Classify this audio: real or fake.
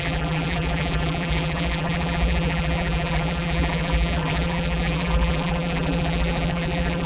fake